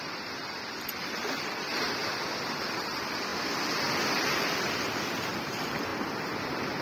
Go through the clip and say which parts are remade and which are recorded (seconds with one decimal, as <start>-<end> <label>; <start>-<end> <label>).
0.0-2.0 remade; 2.0-2.6 recorded; 2.6-3.3 remade; 3.3-4.4 recorded; 4.4-5.9 remade; 5.9-6.8 recorded